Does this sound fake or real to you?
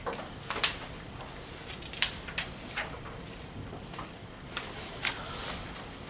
real